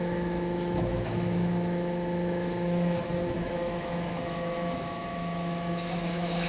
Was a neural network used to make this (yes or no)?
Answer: yes